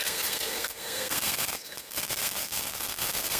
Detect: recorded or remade remade